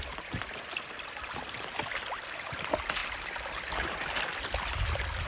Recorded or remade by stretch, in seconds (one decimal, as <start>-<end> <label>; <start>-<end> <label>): 0.0-0.7 remade; 0.7-2.2 recorded; 2.2-5.3 remade